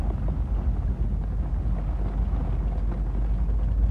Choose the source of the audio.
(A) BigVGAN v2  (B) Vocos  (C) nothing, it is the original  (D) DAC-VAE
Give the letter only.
C